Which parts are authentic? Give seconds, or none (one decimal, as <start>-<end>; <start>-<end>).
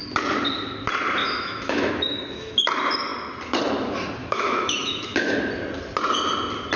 0.0-1.2; 2.7-4.2; 5.4-6.8